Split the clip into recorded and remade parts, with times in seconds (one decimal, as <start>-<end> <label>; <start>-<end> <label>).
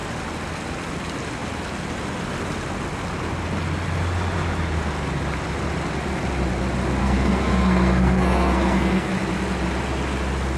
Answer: 0.0-7.0 recorded; 7.0-9.1 remade; 9.1-10.6 recorded